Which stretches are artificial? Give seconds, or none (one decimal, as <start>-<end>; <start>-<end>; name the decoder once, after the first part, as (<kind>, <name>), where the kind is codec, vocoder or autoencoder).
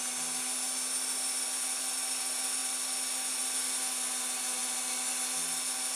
none